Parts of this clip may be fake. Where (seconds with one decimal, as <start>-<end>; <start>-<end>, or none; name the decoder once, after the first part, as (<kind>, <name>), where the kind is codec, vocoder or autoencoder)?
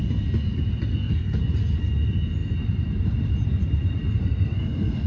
0.9-1.4 (codec, SNAC); 4.2-5.1